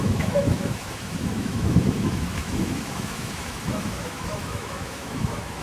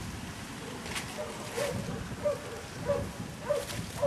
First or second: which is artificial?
first